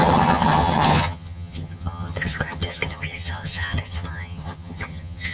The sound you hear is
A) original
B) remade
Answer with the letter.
B